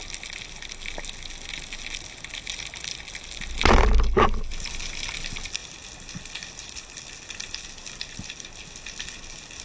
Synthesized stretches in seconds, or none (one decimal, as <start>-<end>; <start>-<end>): none